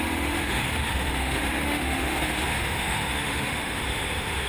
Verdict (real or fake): fake